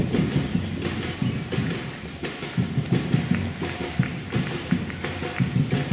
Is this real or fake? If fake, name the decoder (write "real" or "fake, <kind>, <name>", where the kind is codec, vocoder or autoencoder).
real